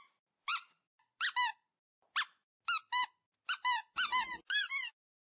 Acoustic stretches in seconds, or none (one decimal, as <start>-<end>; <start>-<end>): 0.0-5.2